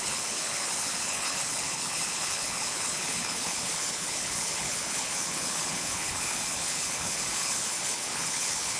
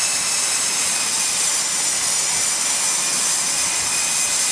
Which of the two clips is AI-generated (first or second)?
first